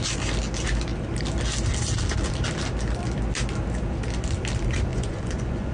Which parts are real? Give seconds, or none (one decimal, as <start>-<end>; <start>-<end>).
0.0-4.9